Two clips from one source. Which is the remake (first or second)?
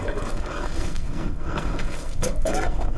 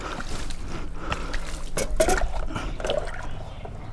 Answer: first